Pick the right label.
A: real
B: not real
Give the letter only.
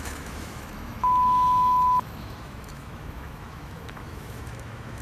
B